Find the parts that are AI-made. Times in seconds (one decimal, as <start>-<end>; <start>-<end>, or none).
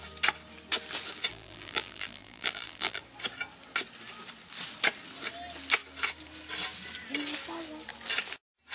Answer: 1.3-3.0